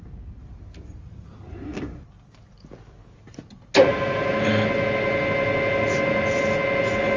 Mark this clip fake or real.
real